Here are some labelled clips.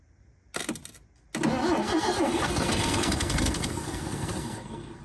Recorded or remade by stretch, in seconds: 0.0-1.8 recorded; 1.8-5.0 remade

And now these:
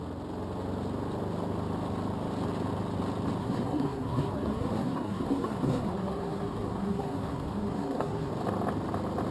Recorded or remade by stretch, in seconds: 0.0-3.4 recorded; 3.4-8.3 remade; 8.3-9.3 recorded

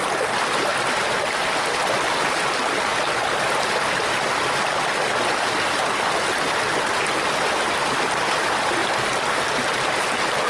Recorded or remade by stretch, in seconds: 0.0-10.5 recorded

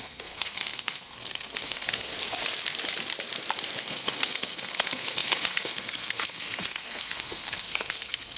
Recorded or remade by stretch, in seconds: 0.0-2.1 remade; 2.1-3.8 recorded; 3.8-8.4 remade

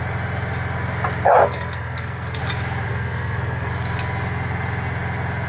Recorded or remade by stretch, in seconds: 0.0-1.4 recorded; 1.4-2.4 remade; 2.4-2.9 recorded; 2.9-3.7 remade; 3.7-5.5 recorded

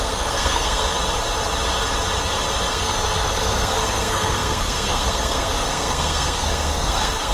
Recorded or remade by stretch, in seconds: 0.0-0.9 remade; 0.9-2.7 recorded; 2.7-7.3 remade

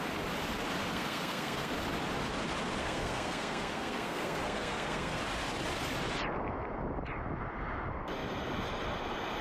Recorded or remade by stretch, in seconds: 0.0-0.9 recorded; 0.9-1.7 remade; 1.7-2.8 recorded; 2.8-5.2 remade; 5.2-9.4 recorded